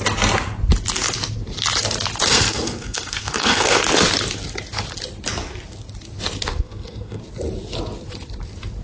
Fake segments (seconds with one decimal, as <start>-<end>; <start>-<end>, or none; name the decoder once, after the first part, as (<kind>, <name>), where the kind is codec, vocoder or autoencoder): 2.3-3.8 (codec, SNAC); 6.5-7.2

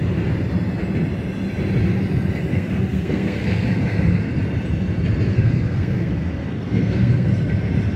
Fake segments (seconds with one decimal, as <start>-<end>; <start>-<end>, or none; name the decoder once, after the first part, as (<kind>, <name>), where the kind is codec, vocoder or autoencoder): 2.5-4.3 (codec, SNAC); 5.3-7.3

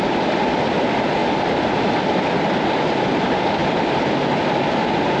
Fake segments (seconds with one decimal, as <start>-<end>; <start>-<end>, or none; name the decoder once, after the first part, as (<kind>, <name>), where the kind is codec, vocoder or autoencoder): none

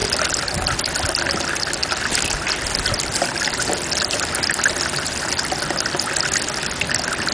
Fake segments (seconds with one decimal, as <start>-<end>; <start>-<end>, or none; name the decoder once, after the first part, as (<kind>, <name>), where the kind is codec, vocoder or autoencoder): none

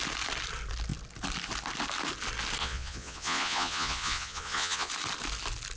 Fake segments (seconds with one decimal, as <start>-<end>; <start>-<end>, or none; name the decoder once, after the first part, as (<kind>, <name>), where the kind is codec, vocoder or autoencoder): 2.6-4.9 (vocoder, Vocos)

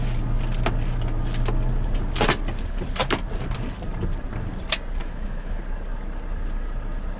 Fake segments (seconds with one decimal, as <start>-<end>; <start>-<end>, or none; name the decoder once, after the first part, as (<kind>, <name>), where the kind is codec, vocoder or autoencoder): 5.0-5.6 (autoencoder, DAC-VAE)

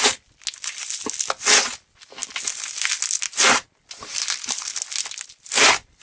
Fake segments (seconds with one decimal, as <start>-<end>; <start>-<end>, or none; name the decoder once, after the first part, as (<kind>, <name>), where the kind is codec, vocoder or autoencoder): none

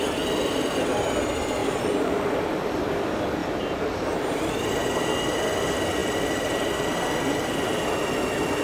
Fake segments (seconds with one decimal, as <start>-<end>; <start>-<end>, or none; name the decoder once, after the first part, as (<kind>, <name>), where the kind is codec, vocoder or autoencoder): 1.6-2.3 (vocoder, BigVGAN v2); 3.4-4.7; 6.0-6.9